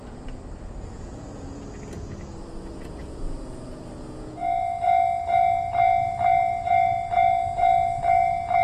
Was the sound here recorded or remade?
remade